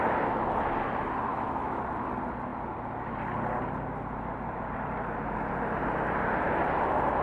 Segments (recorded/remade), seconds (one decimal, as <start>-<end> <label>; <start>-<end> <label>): 0.0-1.3 recorded; 1.3-1.8 remade; 1.8-7.2 recorded